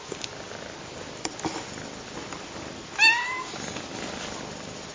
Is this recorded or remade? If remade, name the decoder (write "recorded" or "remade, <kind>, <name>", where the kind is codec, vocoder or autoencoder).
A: recorded